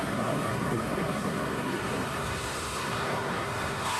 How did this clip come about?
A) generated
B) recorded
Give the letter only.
A